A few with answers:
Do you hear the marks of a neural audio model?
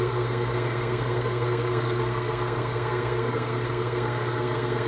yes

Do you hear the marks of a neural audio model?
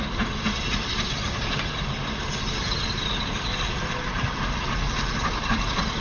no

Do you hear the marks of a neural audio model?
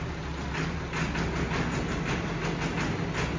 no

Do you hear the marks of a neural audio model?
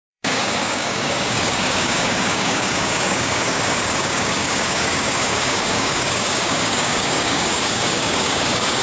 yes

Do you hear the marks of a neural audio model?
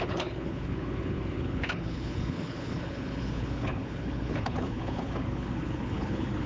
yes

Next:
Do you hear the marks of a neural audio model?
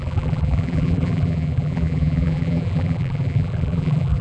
yes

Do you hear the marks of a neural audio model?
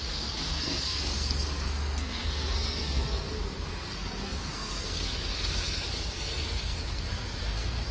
yes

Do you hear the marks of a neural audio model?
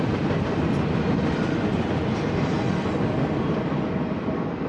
yes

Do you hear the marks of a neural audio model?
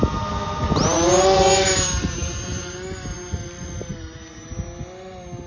no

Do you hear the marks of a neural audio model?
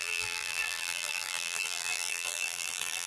yes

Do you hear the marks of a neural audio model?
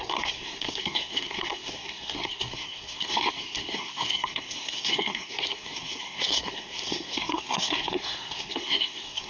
yes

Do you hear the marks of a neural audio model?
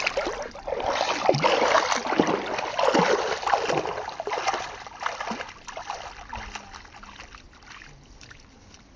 no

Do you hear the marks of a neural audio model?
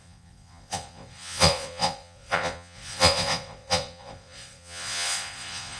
yes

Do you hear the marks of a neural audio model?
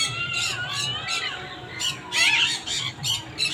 no